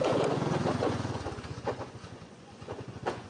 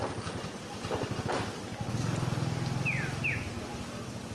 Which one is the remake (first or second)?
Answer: first